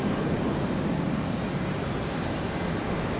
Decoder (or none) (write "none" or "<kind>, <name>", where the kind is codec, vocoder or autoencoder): none